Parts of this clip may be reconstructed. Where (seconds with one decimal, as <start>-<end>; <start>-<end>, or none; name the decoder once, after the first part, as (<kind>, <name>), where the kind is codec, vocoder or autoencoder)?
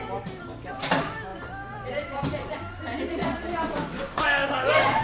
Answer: 1.3-2.5 (vocoder, BigVGAN v2); 2.9-5.0